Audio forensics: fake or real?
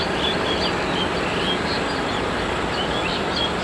fake